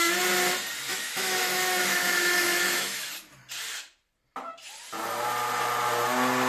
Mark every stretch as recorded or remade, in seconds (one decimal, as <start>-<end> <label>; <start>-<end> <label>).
0.0-0.9 recorded; 0.9-3.1 remade; 3.1-6.5 recorded